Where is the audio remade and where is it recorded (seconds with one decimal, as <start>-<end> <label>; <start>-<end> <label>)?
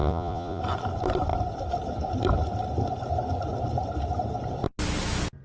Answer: 0.0-0.6 remade; 0.6-5.4 recorded